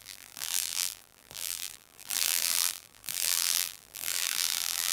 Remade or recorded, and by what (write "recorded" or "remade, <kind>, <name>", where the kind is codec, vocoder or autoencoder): remade, vocoder, BigVGAN v2